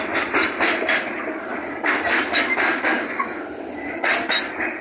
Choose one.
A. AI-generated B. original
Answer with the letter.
B